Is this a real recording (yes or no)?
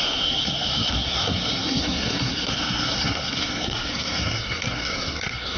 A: no